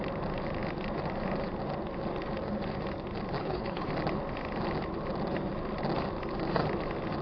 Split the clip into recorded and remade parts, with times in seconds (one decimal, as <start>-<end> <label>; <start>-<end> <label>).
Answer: 0.0-3.4 recorded; 3.4-3.9 remade; 3.9-7.2 recorded